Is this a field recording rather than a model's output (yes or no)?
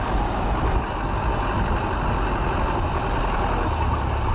yes